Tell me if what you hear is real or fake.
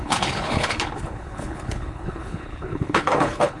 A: fake